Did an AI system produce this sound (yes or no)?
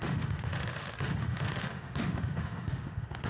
yes